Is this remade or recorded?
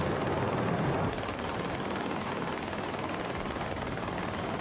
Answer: recorded